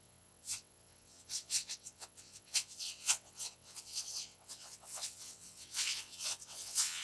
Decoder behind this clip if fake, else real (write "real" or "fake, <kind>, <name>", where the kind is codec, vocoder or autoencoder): fake, vocoder, WaveNeXt